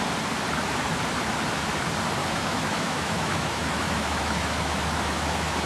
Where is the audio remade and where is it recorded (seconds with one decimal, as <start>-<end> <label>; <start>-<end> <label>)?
0.0-2.2 recorded; 2.2-5.7 remade